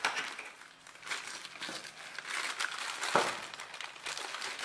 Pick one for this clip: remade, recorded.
recorded